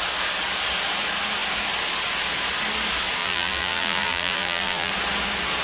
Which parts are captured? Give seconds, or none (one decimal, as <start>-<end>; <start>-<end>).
0.0-3.2; 4.9-5.6